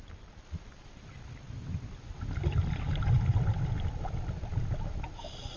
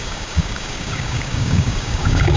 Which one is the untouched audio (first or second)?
first